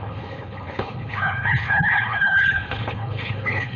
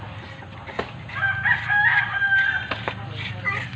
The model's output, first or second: first